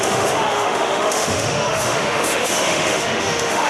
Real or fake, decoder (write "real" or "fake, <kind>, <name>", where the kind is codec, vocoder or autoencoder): fake, autoencoder, DAC-VAE